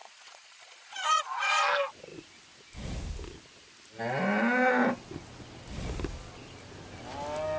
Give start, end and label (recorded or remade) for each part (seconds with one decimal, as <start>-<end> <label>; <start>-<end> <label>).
0.0-1.6 remade; 1.6-7.6 recorded